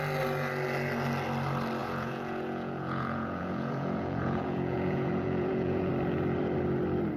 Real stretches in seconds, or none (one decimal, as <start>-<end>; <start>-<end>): 0.0-1.8; 5.9-7.2